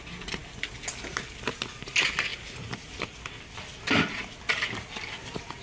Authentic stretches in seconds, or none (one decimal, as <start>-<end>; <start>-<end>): 0.0-5.6